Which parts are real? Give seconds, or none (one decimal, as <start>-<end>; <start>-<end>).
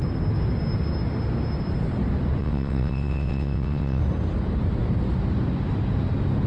0.0-2.4; 4.0-6.5